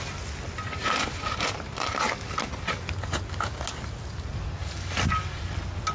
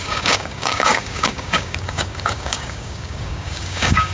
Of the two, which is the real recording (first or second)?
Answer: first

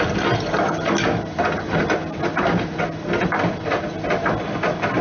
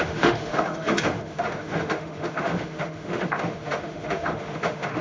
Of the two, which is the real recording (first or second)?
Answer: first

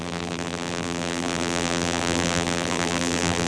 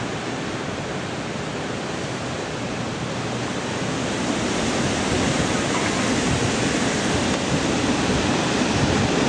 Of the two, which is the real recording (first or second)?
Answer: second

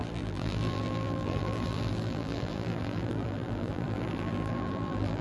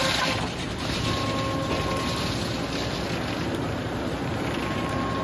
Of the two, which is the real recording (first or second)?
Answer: second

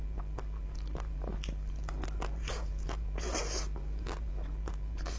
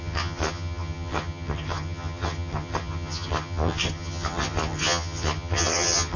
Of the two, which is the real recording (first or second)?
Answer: first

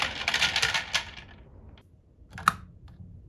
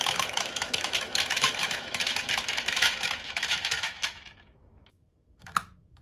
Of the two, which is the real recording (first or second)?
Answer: first